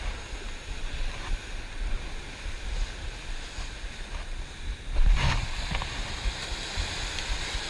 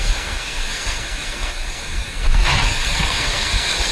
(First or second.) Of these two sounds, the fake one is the second